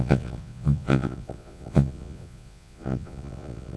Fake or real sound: fake